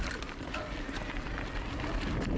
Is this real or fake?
real